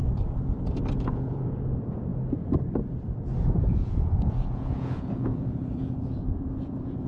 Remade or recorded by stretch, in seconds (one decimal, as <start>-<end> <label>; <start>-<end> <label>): 0.0-1.0 recorded; 1.0-2.1 remade; 2.1-3.7 recorded; 3.7-7.1 remade